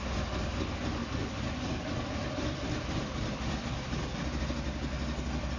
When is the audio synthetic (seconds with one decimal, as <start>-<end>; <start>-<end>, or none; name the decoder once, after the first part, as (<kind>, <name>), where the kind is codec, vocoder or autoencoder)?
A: 1.0-4.4 (vocoder, BigVGAN v2)